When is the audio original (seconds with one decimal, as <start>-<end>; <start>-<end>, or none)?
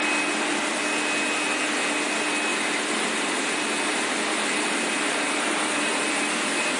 0.0-2.5